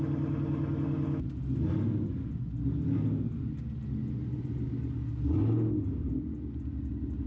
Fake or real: real